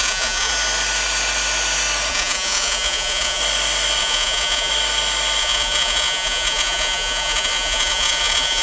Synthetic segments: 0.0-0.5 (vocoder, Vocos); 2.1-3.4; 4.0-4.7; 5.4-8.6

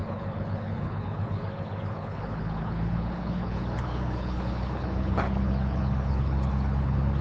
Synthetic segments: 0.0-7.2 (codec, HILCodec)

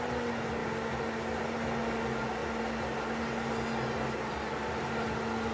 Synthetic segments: none

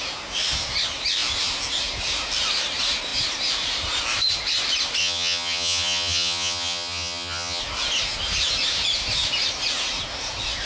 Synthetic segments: 5.0-7.6 (vocoder, HiFi-GAN)

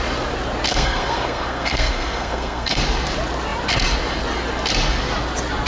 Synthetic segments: 0.7-2.8 (codec, SNAC)